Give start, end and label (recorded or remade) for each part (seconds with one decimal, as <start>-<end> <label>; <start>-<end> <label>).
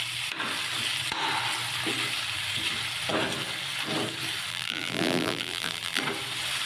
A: 0.0-4.5 recorded; 4.5-6.0 remade; 6.0-6.7 recorded